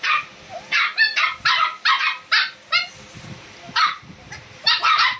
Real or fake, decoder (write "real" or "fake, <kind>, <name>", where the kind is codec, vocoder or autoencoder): real